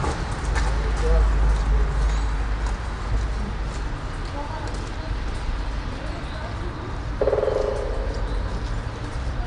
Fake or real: real